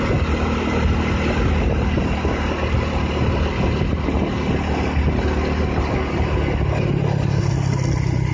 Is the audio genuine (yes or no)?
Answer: yes